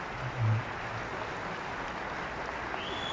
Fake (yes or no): no